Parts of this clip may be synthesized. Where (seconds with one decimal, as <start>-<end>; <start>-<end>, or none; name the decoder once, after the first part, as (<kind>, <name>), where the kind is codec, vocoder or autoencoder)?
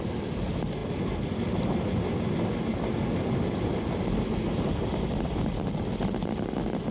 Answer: none